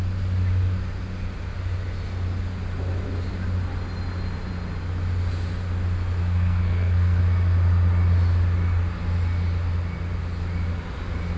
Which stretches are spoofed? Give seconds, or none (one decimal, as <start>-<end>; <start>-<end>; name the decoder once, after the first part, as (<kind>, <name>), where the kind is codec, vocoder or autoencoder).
6.2-7.2 (codec, SNAC)